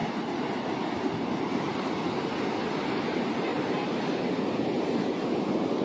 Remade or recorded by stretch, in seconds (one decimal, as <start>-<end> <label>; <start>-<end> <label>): 0.0-1.9 remade; 1.9-3.5 recorded; 3.5-4.3 remade; 4.3-5.8 recorded